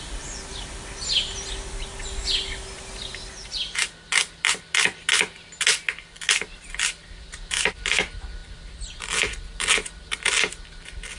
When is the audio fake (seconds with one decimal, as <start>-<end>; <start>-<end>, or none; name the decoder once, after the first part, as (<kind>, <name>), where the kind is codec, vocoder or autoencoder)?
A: none